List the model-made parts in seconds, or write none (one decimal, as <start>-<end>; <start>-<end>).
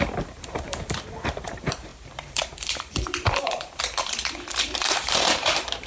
0.0-5.9